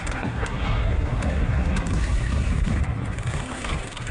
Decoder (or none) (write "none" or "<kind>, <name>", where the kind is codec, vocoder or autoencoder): codec, SNAC